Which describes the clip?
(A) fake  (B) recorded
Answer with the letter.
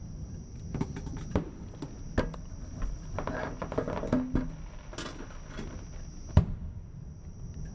B